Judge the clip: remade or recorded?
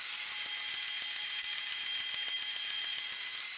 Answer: recorded